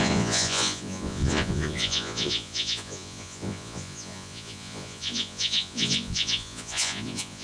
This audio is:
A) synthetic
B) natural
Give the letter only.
A